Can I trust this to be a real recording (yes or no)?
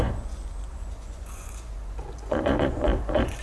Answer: no